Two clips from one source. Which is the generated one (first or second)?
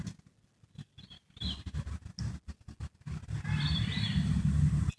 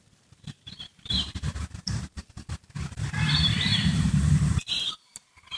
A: second